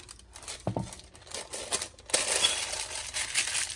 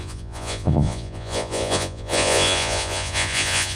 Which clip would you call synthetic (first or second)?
second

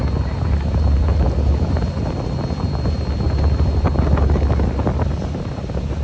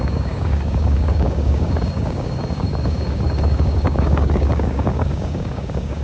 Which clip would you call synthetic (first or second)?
second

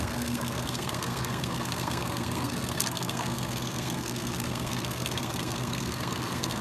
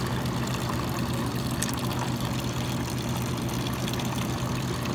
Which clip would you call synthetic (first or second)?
first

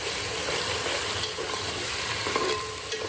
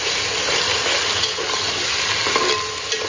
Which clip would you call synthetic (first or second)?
first